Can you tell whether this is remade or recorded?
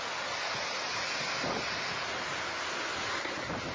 recorded